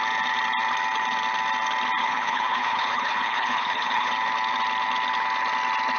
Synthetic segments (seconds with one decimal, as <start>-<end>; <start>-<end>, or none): 2.0-4.1